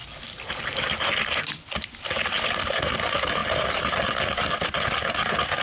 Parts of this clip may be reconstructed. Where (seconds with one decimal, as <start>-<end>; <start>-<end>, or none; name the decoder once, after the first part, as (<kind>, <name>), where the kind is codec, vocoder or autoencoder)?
none